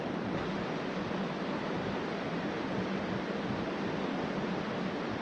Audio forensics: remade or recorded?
recorded